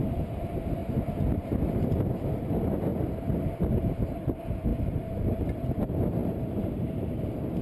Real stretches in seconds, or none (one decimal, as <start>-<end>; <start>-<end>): 0.0-4.7; 5.2-6.2; 7.1-7.6